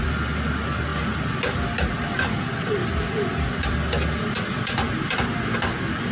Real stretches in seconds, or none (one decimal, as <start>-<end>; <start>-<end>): 0.0-6.1